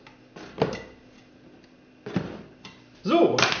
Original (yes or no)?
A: yes